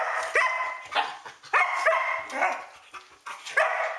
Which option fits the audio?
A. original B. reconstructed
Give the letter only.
A